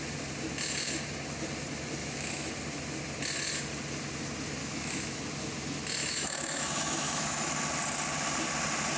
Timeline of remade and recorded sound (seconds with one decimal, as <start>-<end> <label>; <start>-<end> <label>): 0.0-2.0 recorded; 2.0-2.5 remade; 2.5-4.6 recorded; 4.6-5.2 remade; 5.2-6.0 recorded; 6.0-7.5 remade; 7.5-9.0 recorded